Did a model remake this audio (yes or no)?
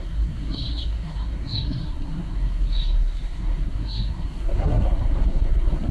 yes